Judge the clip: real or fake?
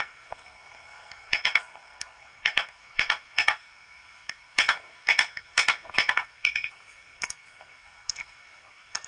fake